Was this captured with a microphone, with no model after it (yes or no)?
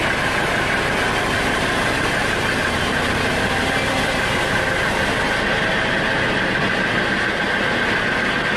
yes